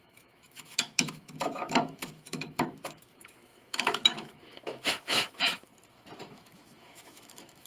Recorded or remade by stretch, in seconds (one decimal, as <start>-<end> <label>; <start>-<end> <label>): 0.0-5.7 remade; 5.7-6.3 recorded; 6.3-7.7 remade